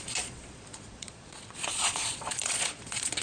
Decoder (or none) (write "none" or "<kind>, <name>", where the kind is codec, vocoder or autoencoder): vocoder, Vocos